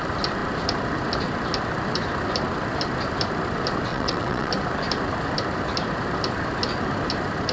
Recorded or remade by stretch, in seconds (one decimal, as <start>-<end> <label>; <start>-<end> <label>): 0.0-3.9 recorded; 3.9-4.5 remade; 4.5-7.5 recorded